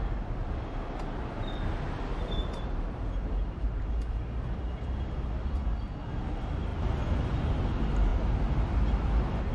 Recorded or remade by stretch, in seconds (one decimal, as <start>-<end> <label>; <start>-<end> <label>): 0.0-2.4 recorded; 2.4-3.9 remade; 3.9-9.5 recorded